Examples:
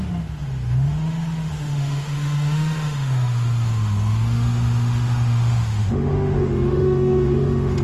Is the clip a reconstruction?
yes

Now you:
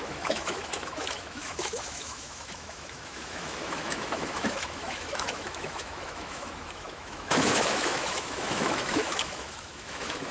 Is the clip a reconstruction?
yes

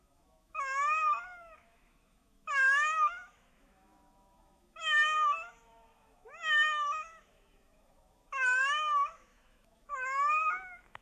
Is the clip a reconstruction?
yes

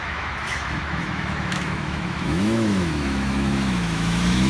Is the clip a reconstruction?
yes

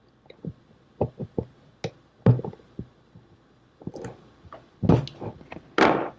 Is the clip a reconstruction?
no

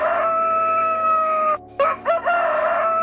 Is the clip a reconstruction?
yes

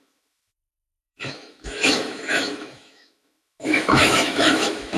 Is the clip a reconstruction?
yes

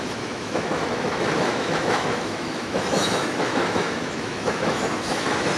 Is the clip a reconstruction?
yes